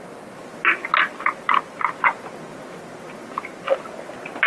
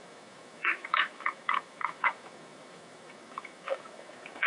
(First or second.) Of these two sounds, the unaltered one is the first